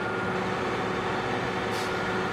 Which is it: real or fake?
real